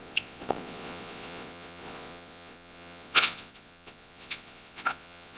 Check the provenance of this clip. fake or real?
fake